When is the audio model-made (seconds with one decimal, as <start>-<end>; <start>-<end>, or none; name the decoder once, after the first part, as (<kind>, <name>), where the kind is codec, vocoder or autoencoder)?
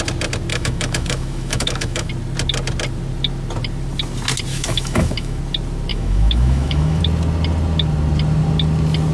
0.5-2.1 (autoencoder, DAC-VAE); 4.5-5.4; 5.9-7.0